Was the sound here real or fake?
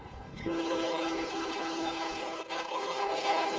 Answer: fake